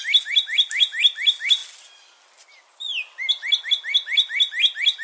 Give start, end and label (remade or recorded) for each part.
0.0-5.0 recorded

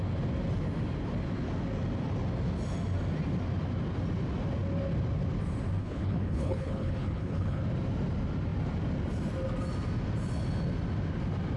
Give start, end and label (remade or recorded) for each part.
0.0-5.8 recorded; 5.8-7.6 remade; 7.6-11.6 recorded

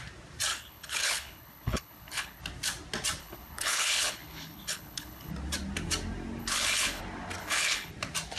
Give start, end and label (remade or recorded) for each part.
0.0-0.5 recorded; 0.5-2.4 remade; 2.4-3.2 recorded; 3.2-5.3 remade; 5.3-6.4 recorded; 6.4-7.0 remade; 7.0-7.4 recorded; 7.4-7.9 remade; 7.9-8.4 recorded

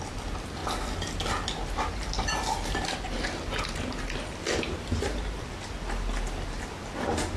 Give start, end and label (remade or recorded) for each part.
0.0-7.4 recorded

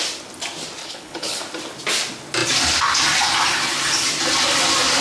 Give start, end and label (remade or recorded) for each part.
0.0-0.8 recorded; 0.8-1.4 remade; 1.4-5.0 recorded

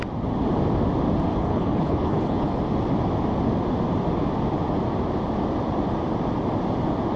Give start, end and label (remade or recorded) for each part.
0.0-1.3 recorded; 1.3-2.6 remade; 2.6-7.2 recorded

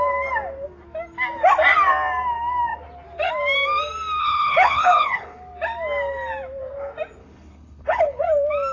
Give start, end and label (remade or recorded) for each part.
0.0-4.2 recorded; 4.2-5.4 remade; 5.4-7.2 recorded; 7.2-8.2 remade; 8.2-8.7 recorded